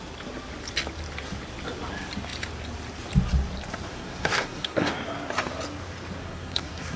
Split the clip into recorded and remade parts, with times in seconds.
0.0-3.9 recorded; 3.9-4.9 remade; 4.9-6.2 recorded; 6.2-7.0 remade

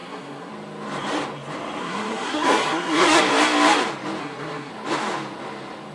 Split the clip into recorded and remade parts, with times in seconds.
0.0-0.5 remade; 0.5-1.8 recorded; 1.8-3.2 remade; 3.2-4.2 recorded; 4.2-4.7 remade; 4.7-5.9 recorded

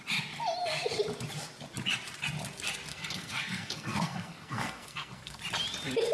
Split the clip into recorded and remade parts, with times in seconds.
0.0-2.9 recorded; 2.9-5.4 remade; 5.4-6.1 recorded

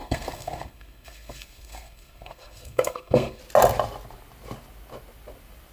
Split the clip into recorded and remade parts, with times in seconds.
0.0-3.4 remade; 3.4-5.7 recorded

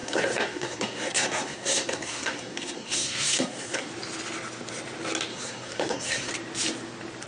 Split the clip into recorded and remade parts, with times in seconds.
0.0-3.9 remade; 3.9-5.3 recorded; 5.3-6.3 remade; 6.3-7.3 recorded

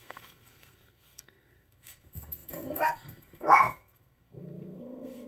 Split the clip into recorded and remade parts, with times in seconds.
0.0-5.3 remade

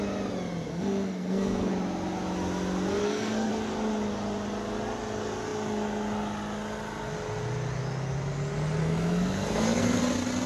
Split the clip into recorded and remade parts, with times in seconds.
0.0-0.7 recorded; 0.7-1.7 remade; 1.7-3.0 recorded; 3.0-3.5 remade; 3.5-8.8 recorded; 8.8-10.0 remade; 10.0-10.5 recorded